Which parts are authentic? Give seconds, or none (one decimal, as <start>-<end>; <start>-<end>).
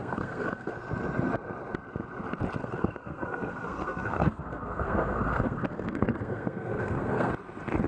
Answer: 0.7-2.6; 7.3-7.9